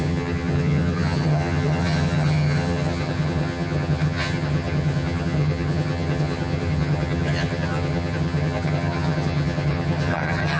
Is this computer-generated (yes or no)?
yes